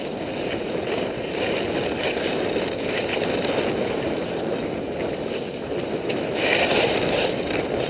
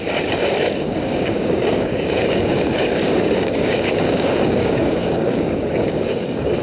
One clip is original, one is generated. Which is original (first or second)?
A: first